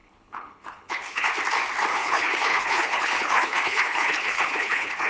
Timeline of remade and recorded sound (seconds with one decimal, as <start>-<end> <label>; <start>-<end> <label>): 0.0-1.3 remade; 1.3-1.9 recorded; 1.9-5.1 remade